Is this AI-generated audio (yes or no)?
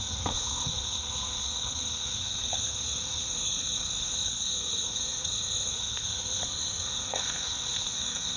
yes